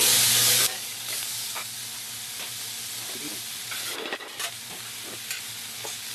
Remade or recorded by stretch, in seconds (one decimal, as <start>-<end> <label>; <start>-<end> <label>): 0.0-1.8 remade; 1.8-5.5 recorded; 5.5-6.1 remade